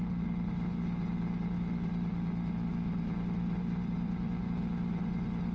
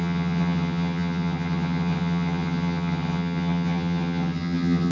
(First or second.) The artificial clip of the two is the second